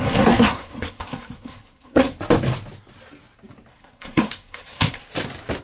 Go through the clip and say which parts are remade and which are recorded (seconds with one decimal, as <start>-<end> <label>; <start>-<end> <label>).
0.0-2.2 remade; 2.2-3.7 recorded; 3.7-5.0 remade; 5.0-5.6 recorded